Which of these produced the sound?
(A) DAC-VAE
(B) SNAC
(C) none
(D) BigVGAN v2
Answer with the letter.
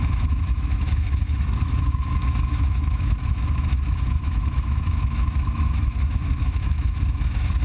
A